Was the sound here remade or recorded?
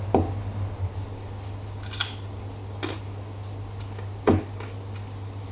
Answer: recorded